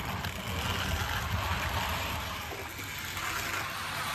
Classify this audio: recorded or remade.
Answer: recorded